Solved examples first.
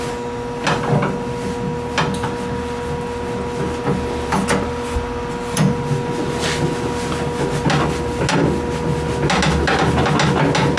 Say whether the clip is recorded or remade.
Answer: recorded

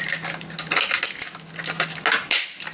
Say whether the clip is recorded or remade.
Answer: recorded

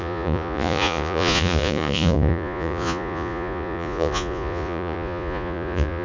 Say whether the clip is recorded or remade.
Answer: remade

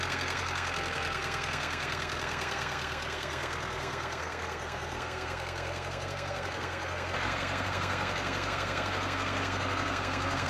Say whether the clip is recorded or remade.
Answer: remade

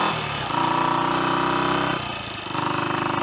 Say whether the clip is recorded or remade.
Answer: recorded